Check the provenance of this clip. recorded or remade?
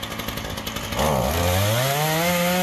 recorded